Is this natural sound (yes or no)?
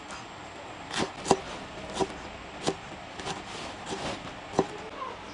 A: yes